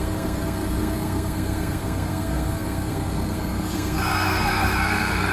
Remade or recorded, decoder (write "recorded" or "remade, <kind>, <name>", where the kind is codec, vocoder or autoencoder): remade, codec, SNAC